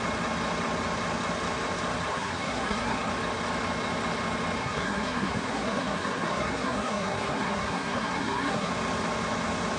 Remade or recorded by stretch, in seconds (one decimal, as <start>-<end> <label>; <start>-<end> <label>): 0.0-2.1 recorded; 2.1-3.1 remade; 3.1-4.6 recorded; 4.6-8.7 remade; 8.7-9.8 recorded